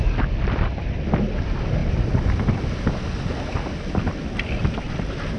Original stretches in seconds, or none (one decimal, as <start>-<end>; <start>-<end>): 0.0-5.4